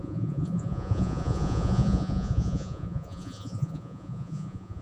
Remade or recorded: remade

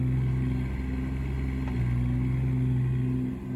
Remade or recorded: recorded